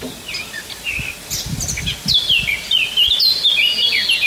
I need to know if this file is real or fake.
real